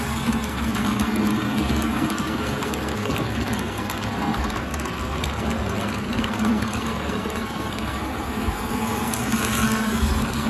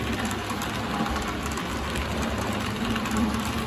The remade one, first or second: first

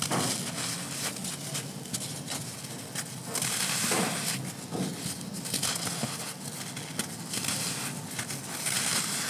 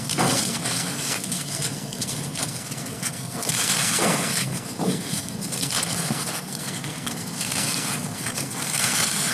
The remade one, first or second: second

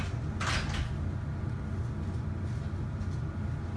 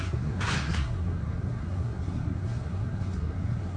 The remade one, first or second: second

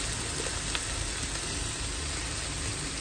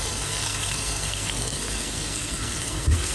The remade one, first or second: second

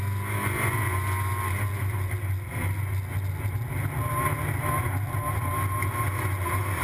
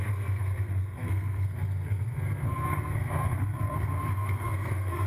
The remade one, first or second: second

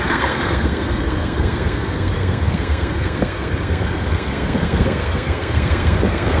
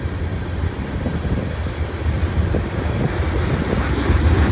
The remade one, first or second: first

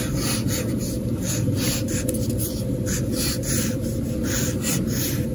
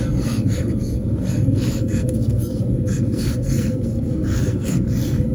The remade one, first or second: second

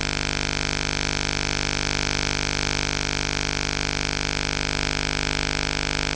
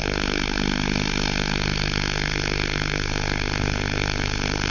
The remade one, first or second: second